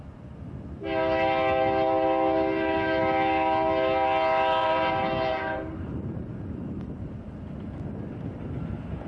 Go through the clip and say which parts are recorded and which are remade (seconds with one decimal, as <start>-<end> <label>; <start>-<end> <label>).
0.0-4.6 recorded; 4.6-6.9 remade; 6.9-9.1 recorded